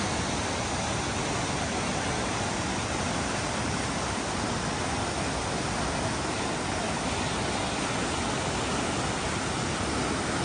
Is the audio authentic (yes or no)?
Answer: yes